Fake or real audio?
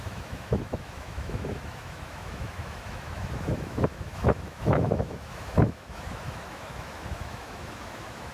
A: fake